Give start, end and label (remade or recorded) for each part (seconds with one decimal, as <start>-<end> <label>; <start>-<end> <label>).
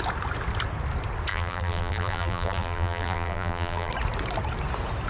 0.0-1.3 recorded; 1.3-3.9 remade; 3.9-5.1 recorded